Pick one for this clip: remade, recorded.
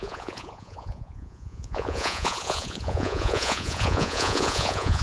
remade